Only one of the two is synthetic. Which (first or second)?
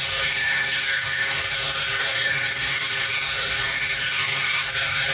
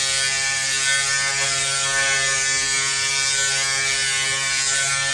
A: first